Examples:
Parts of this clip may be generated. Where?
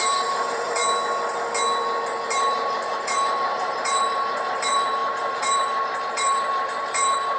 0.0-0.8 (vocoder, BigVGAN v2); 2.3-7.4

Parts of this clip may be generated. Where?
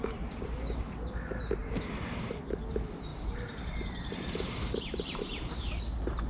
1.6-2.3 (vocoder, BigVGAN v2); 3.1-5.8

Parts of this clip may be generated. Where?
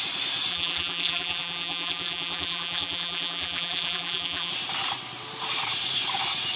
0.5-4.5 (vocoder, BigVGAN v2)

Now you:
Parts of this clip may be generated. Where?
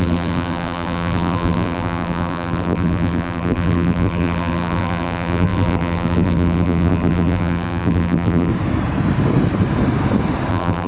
0.0-8.5 (vocoder, BigVGAN v2); 10.5-10.9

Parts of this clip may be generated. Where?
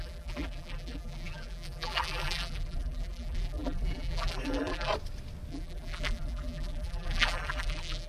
0.0-4.9 (vocoder, BigVGAN v2); 5.5-8.1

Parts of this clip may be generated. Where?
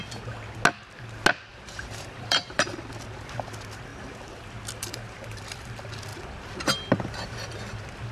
1.5-2.9 (vocoder, BigVGAN v2); 3.9-5.6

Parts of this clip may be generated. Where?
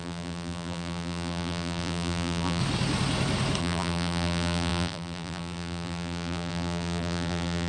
0.0-2.6 (vocoder, BigVGAN v2); 3.6-7.7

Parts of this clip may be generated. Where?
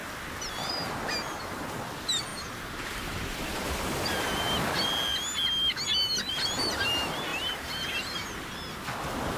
2.3-4.4 (vocoder, BigVGAN v2); 7.3-8.2